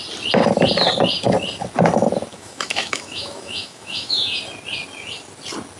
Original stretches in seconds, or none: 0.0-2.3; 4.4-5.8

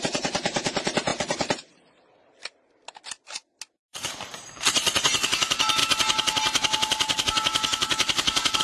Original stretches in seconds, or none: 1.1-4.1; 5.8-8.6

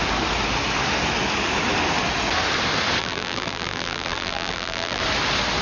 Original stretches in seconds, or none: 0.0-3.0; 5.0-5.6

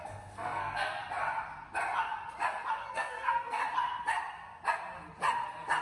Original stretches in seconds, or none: 1.0-2.9; 3.6-5.8

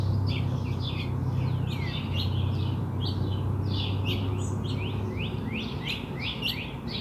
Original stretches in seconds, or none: 0.0-7.0

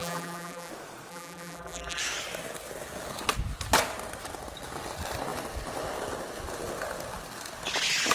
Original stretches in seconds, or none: 0.7-1.1; 2.0-8.1